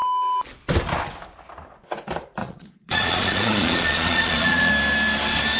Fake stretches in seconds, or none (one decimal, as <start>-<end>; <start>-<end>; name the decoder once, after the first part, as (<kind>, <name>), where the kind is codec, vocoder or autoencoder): 2.4-4.7 (vocoder, Vocos)